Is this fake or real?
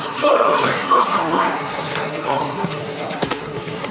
fake